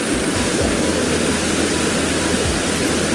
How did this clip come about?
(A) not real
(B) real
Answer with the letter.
B